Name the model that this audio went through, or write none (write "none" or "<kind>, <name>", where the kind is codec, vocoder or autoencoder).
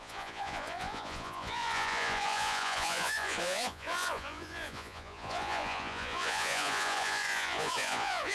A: vocoder, Vocos